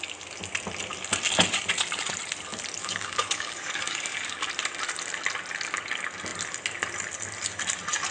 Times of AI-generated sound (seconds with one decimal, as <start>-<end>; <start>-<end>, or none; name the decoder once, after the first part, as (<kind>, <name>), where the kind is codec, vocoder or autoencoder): 2.8-4.5 (codec, DAC)